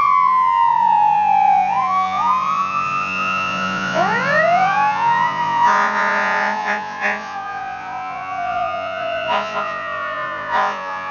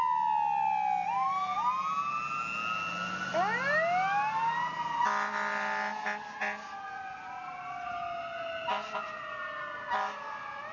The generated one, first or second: first